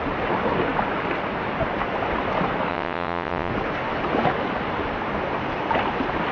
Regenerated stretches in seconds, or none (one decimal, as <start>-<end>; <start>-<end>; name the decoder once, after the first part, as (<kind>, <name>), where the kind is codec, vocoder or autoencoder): 2.7-3.5 (vocoder, WaveNeXt)